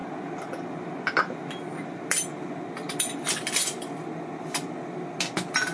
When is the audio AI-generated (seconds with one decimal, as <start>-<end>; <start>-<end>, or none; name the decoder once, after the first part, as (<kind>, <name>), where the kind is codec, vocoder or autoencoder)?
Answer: none